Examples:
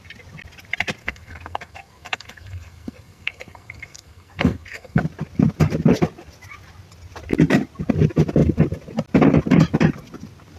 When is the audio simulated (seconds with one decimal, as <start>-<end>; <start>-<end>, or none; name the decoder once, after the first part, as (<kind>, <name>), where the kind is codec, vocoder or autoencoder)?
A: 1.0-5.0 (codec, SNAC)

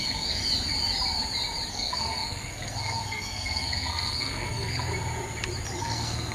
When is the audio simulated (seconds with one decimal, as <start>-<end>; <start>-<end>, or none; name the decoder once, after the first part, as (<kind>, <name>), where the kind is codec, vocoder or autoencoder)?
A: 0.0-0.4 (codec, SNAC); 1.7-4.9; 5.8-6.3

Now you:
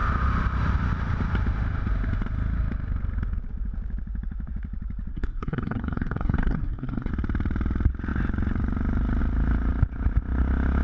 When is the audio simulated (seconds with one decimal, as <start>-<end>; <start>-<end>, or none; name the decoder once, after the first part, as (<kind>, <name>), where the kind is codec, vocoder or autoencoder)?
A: 5.1-7.1 (codec, SNAC)

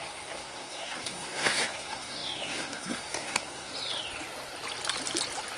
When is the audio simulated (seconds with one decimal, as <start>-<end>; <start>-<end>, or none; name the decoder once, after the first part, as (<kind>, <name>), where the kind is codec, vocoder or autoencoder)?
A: 0.0-3.7 (codec, SNAC)

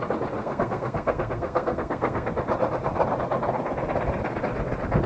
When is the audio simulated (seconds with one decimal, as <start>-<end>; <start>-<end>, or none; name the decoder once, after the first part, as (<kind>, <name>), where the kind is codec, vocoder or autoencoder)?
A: 0.4-2.3 (codec, SNAC)

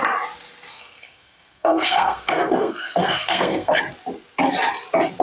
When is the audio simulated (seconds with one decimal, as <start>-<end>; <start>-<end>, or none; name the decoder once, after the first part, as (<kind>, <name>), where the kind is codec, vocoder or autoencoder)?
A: 0.7-3.8 (codec, SNAC)

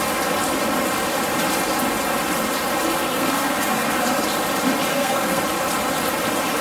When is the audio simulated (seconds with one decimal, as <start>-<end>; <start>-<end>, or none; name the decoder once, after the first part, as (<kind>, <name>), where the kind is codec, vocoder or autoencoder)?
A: 3.1-3.9 (codec, SNAC); 4.9-5.4